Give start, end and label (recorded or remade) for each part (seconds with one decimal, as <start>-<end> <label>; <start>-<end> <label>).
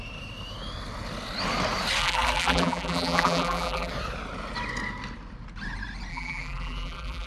0.0-2.0 recorded; 2.0-3.9 remade; 3.9-6.1 recorded; 6.1-7.3 remade